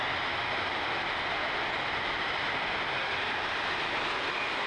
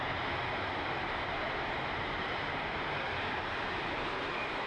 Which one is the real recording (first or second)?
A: first